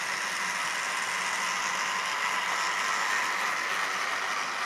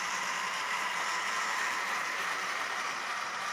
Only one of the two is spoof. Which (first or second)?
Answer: second